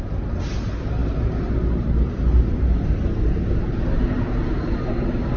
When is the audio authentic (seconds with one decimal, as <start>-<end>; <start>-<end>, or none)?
0.0-5.4